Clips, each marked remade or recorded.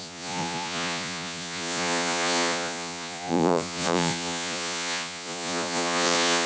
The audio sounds remade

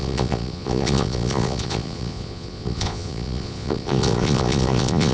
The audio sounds remade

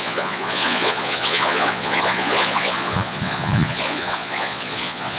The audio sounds remade